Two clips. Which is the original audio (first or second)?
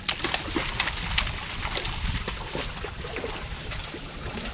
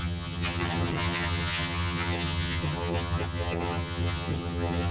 first